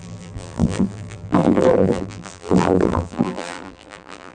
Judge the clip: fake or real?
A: fake